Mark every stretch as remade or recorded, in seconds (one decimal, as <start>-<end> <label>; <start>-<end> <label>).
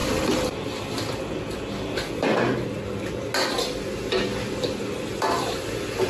0.0-6.1 recorded